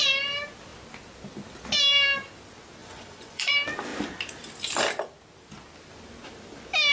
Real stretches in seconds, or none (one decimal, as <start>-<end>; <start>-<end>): 0.0-2.8; 3.5-6.9

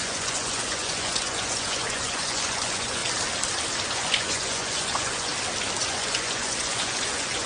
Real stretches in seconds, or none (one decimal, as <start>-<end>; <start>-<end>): 3.0-3.9; 5.3-5.8

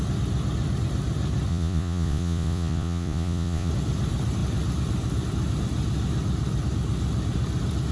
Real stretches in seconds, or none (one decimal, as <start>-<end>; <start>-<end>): 0.0-1.5; 3.7-7.9